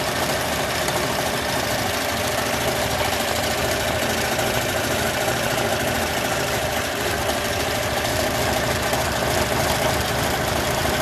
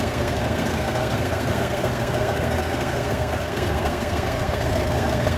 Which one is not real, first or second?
second